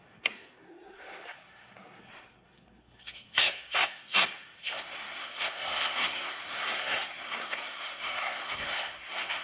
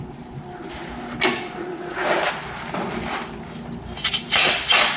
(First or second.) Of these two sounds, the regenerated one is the first